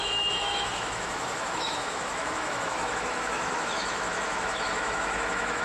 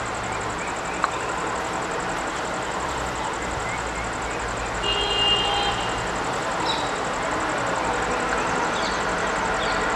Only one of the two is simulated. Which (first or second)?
first